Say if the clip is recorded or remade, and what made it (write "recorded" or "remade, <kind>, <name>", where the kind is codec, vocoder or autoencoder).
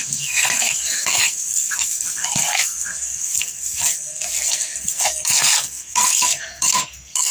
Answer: remade, codec, SNAC